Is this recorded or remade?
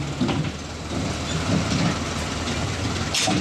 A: recorded